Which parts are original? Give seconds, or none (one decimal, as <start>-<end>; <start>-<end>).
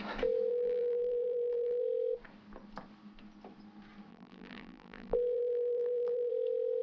0.0-0.5; 1.8-4.1; 6.3-6.8